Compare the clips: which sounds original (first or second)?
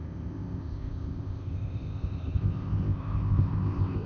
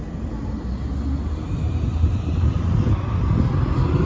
second